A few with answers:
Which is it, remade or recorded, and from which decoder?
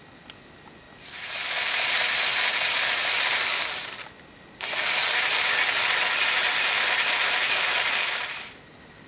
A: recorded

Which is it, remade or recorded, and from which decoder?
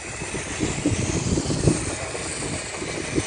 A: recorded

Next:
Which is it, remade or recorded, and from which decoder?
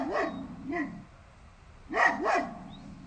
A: recorded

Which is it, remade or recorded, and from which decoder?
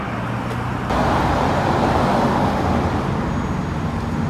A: recorded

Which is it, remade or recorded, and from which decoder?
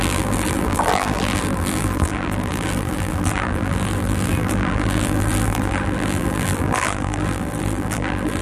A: remade, vocoder, BigVGAN v2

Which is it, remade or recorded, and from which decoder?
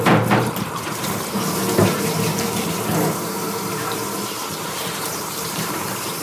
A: remade, vocoder, BigVGAN v2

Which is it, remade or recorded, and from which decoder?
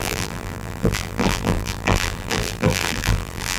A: remade, vocoder, BigVGAN v2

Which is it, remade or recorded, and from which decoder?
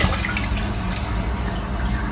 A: recorded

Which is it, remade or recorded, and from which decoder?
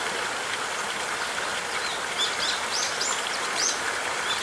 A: remade, vocoder, BigVGAN v2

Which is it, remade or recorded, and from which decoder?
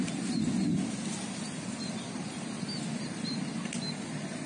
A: recorded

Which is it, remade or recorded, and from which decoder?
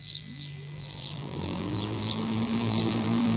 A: remade, vocoder, BigVGAN v2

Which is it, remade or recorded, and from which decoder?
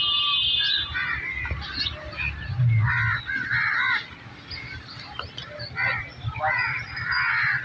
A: recorded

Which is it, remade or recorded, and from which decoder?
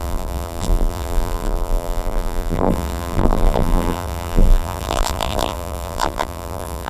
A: remade, vocoder, BigVGAN v2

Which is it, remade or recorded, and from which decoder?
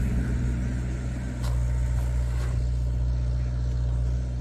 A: recorded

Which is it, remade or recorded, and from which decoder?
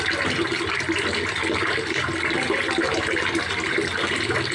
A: recorded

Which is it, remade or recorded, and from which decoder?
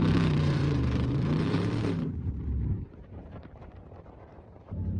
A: remade, vocoder, BigVGAN v2